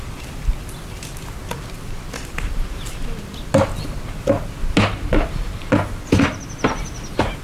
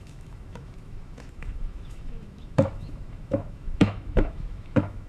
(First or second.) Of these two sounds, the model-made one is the second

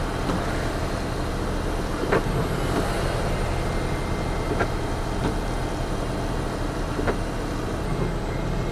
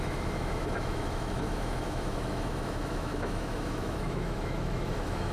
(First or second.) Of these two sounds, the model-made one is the second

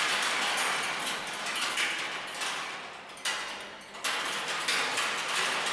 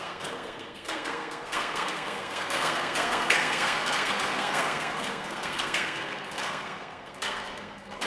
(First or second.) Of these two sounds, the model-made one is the second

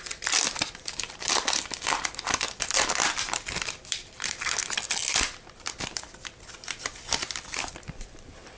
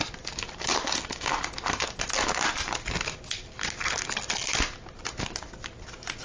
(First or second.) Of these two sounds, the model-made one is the first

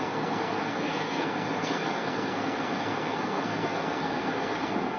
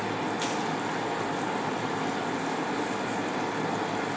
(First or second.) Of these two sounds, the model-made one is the first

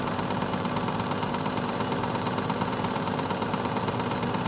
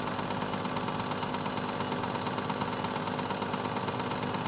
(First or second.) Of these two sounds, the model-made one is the first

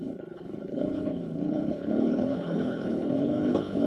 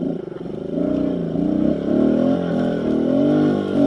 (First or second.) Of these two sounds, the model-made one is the first